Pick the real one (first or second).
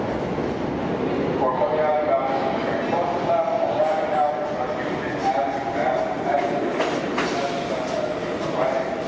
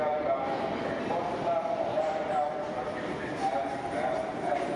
first